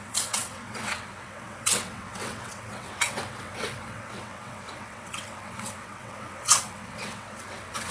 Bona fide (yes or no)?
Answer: no